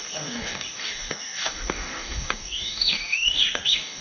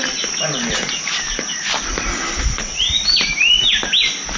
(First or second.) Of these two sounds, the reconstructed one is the first